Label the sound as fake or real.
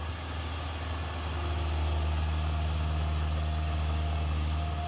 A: real